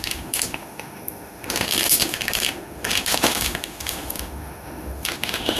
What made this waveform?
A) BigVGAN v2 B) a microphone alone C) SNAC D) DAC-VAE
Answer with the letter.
D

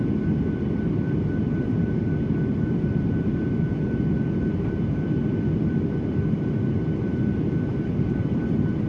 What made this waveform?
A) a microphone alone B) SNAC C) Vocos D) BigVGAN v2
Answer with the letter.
D